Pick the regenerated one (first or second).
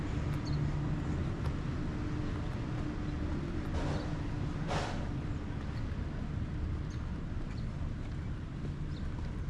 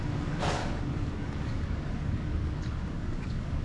second